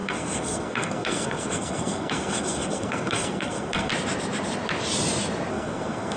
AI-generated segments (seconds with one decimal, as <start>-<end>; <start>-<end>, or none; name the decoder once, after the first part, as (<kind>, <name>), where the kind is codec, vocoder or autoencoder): 0.0-3.9 (codec, SNAC); 5.5-6.2